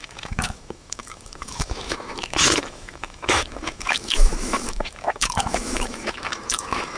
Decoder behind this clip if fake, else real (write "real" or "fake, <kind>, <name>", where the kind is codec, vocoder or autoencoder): fake, autoencoder, DAC-VAE